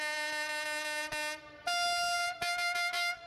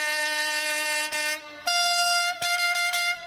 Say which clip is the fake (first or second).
second